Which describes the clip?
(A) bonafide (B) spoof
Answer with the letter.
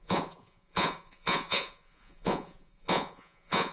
B